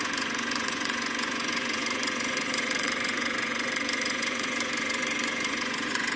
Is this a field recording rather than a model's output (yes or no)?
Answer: no